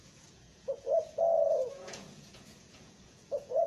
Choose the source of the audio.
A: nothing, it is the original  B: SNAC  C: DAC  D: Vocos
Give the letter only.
D